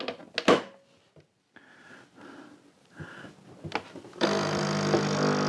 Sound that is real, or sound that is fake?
real